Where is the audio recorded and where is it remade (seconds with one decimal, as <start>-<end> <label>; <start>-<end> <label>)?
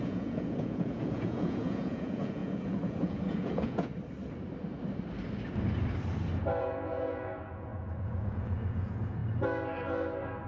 0.0-3.9 remade; 3.9-6.6 recorded; 6.6-9.2 remade; 9.2-10.5 recorded